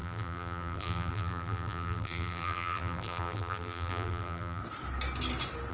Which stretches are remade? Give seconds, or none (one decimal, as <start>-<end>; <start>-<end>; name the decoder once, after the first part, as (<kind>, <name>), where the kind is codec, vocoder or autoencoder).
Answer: 0.0-4.6 (vocoder, BigVGAN v2)